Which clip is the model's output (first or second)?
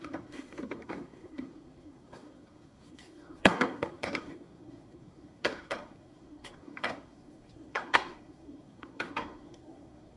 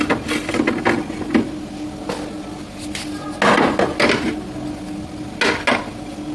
first